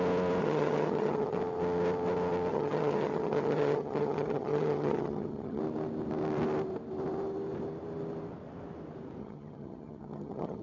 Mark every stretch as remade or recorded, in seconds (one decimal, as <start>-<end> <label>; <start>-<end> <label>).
0.0-0.4 recorded; 0.4-1.4 remade; 1.4-2.5 recorded; 2.5-5.6 remade; 5.6-9.2 recorded; 9.2-10.6 remade